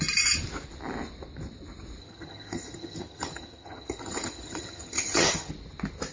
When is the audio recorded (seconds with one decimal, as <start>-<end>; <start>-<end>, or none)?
0.0-2.0; 5.5-6.1